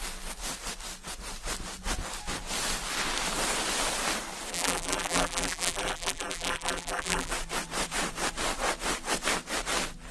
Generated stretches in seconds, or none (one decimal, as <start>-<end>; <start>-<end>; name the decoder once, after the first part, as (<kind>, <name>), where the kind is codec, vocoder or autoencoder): 4.5-7.3 (vocoder, BigVGAN v2)